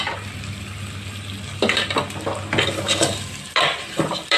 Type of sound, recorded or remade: recorded